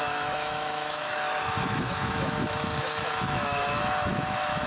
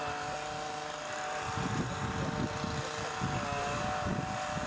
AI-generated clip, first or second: first